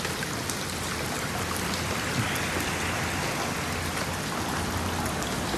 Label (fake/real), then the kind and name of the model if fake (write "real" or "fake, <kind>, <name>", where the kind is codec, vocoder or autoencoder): real